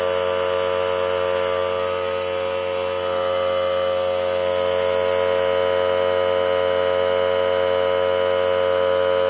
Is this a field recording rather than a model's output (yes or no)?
yes